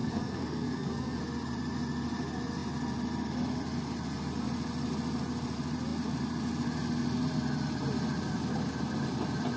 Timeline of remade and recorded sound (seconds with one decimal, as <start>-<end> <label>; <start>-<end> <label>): 0.0-1.2 remade; 1.2-9.6 recorded